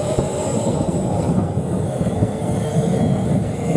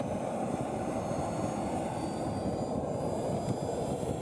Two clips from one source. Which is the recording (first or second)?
second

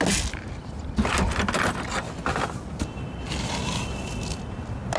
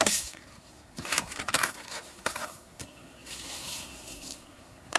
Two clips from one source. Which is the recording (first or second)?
first